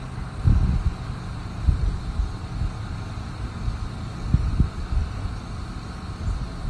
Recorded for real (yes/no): yes